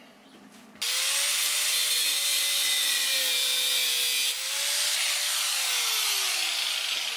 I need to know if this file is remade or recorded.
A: recorded